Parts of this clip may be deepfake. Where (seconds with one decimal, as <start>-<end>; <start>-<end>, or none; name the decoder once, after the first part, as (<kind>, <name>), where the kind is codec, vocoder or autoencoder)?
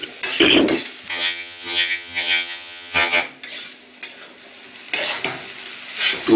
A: 1.1-3.2 (vocoder, HiFi-GAN)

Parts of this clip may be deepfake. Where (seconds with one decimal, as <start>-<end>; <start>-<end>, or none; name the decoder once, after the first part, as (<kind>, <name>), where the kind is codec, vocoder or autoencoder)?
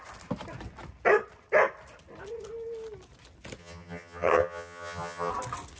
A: 3.6-5.3 (vocoder, HiFi-GAN)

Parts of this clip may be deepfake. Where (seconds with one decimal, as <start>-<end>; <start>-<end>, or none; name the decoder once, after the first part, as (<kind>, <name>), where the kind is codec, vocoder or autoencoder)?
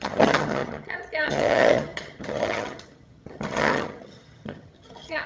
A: 0.0-5.3 (vocoder, HiFi-GAN)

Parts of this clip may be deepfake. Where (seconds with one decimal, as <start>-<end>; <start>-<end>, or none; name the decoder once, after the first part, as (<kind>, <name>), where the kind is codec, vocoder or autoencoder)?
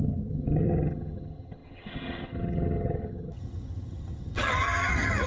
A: 0.0-5.3 (vocoder, HiFi-GAN)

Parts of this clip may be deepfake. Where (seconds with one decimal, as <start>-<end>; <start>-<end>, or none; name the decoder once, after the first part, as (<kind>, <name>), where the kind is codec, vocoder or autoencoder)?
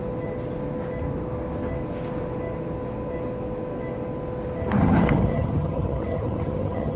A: 4.8-7.0 (vocoder, HiFi-GAN)